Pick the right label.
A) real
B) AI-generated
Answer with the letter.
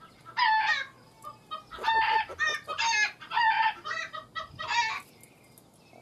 A